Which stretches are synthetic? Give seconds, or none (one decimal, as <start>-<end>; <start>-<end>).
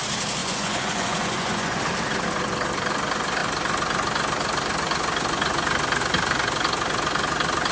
0.4-1.8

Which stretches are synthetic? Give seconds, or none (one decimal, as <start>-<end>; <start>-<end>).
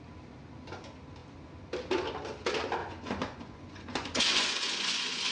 2.8-5.3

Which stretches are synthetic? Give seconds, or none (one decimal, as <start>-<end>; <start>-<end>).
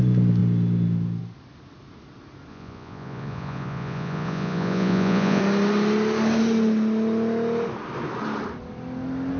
2.5-5.4